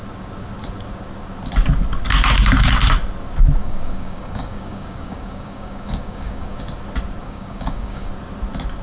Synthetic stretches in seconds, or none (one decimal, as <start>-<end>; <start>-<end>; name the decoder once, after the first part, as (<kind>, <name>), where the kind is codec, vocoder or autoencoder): 3.6-6.6 (codec, DAC); 7.2-8.1